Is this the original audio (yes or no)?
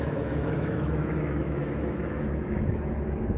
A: no